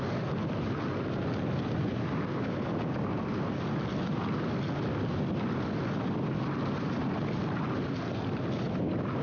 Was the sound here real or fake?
real